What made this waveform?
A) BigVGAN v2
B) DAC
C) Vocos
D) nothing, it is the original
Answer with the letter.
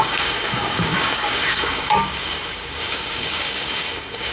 B